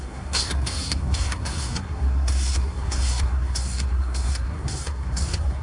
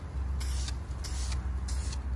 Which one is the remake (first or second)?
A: first